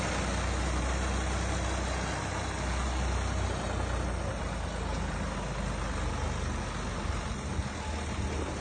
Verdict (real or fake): real